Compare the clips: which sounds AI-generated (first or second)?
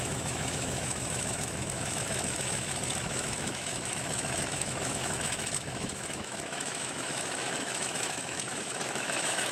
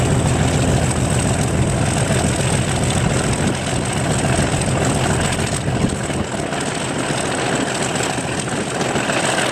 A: first